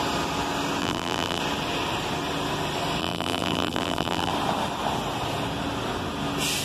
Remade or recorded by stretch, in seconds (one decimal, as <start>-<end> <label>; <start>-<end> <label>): 0.0-0.8 recorded; 0.8-1.4 remade; 1.4-3.0 recorded; 3.0-4.3 remade; 4.3-6.6 recorded